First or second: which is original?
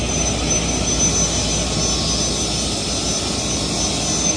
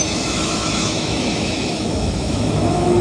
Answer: first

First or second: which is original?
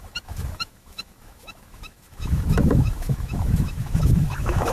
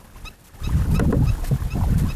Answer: second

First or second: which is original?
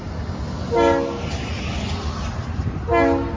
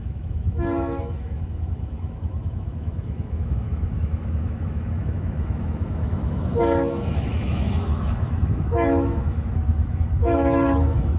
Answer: first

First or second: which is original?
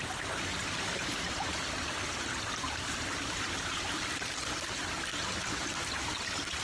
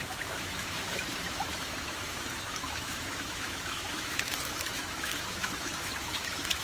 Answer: first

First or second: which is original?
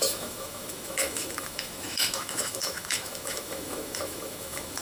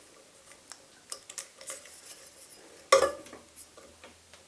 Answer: second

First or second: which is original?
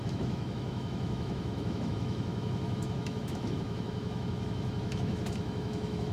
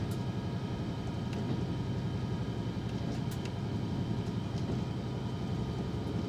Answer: second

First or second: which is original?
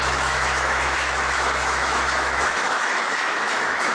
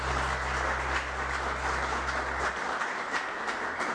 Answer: second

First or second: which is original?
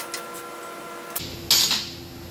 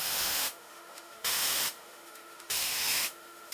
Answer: first